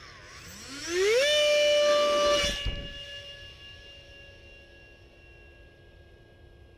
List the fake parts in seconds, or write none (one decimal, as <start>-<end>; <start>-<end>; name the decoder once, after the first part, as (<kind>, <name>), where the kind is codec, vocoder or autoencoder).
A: none